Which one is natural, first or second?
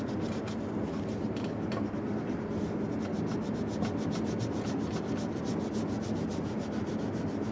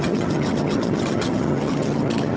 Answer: first